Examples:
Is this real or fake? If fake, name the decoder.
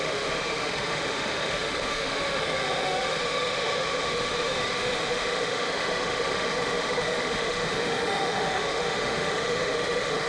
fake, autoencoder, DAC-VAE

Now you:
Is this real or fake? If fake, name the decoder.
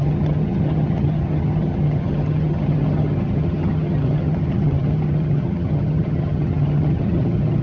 fake, vocoder, HiFi-GAN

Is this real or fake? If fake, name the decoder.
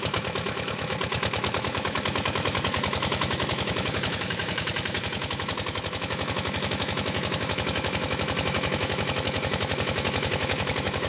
fake, autoencoder, DAC-VAE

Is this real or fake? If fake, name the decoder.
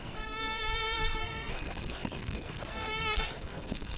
fake, codec, SNAC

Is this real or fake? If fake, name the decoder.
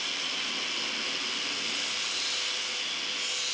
real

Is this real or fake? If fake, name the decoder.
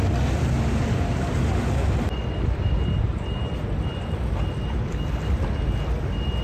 real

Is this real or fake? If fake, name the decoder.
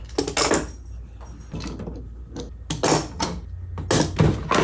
real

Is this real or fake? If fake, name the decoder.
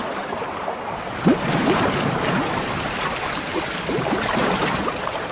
fake, vocoder, BigVGAN v2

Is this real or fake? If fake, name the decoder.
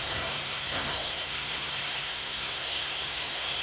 fake, codec, SNAC